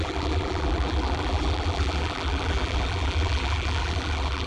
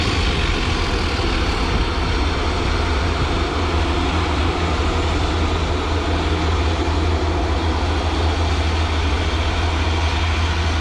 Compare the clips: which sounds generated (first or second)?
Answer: first